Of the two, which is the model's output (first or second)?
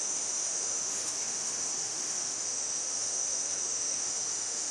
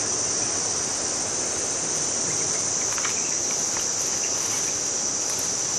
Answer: first